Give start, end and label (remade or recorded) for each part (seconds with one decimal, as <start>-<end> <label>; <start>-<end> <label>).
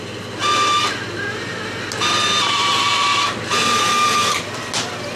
0.0-5.2 recorded